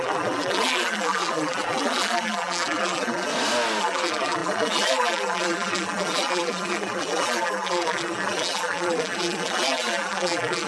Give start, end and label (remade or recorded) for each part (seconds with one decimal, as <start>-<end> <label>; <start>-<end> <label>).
0.0-3.3 remade; 3.3-3.8 recorded; 3.8-10.7 remade